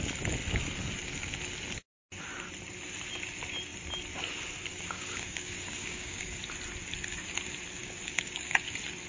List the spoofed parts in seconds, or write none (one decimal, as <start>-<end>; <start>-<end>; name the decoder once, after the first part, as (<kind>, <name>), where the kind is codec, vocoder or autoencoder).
4.7-6.4 (codec, DAC); 7.8-8.7